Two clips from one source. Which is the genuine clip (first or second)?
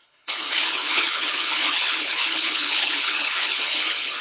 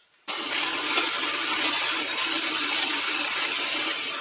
second